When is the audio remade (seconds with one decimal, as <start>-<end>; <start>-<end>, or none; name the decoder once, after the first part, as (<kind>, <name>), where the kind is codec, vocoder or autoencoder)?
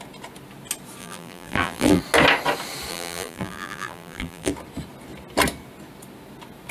1.0-2.0 (vocoder, BigVGAN v2); 2.9-4.5